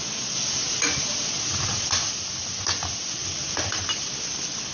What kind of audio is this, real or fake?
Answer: real